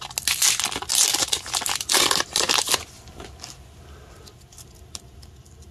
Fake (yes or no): no